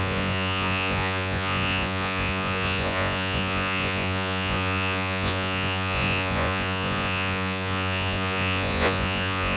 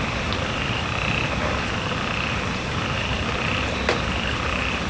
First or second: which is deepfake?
first